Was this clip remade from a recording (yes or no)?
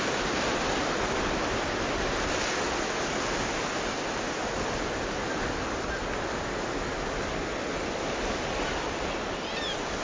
no